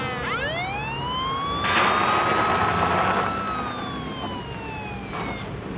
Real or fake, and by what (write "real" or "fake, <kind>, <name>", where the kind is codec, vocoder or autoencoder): real